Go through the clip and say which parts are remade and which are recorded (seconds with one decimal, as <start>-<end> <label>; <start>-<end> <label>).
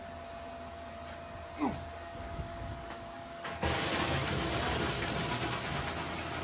0.0-1.9 recorded; 1.9-4.2 remade; 4.2-6.4 recorded